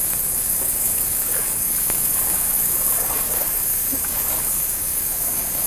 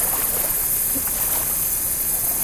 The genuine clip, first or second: second